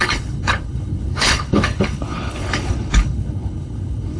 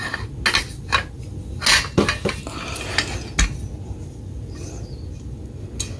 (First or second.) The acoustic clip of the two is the second